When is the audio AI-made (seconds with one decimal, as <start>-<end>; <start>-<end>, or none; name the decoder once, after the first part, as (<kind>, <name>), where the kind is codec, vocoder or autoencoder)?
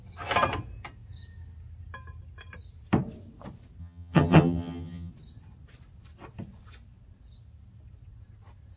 3.8-5.1 (vocoder, HiFi-GAN)